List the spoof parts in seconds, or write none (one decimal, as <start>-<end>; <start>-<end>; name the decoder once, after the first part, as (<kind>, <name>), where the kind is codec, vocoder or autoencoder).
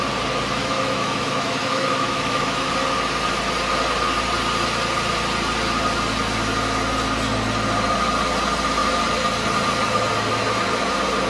0.6-2.7 (autoencoder, DAC-VAE)